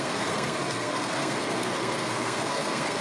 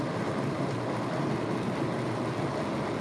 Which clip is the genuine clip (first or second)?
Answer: second